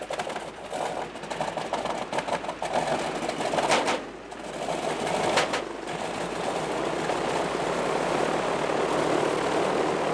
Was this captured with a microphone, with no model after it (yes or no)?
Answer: yes